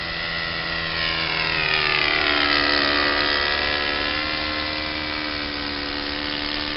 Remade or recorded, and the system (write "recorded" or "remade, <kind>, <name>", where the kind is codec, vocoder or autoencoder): recorded